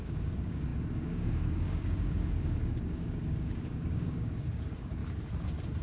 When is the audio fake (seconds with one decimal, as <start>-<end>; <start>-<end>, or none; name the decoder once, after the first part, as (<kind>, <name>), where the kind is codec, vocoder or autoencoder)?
0.0-5.0 (codec, DAC)